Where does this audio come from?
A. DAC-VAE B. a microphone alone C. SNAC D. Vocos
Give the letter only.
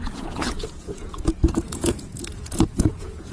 D